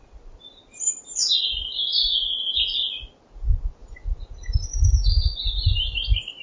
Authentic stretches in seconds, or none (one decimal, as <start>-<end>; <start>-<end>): 0.0-6.4